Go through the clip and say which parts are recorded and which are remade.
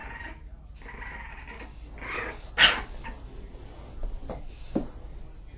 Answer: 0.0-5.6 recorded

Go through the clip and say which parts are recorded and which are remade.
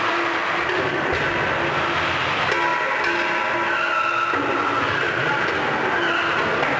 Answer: 0.0-6.8 recorded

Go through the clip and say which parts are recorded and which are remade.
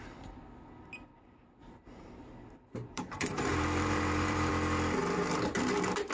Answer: 0.0-1.1 recorded; 1.1-4.5 remade; 4.5-6.1 recorded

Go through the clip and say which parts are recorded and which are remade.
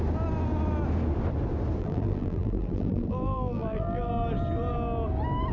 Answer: 0.0-1.8 recorded; 1.8-4.1 remade; 4.1-5.5 recorded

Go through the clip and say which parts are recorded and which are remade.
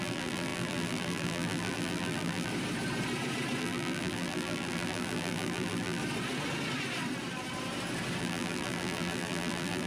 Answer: 0.0-2.5 remade; 2.5-3.6 recorded; 3.6-6.0 remade; 6.0-8.2 recorded; 8.2-9.9 remade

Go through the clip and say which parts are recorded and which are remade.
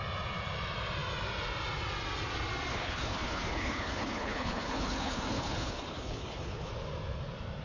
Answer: 0.0-2.7 recorded; 2.7-6.7 remade; 6.7-7.6 recorded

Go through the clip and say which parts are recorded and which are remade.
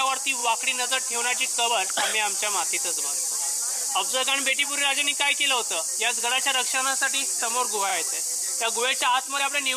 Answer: 0.0-0.4 recorded; 0.4-1.7 remade; 1.7-9.8 recorded